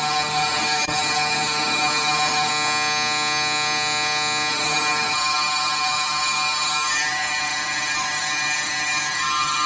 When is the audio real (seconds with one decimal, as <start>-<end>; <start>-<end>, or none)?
2.5-4.5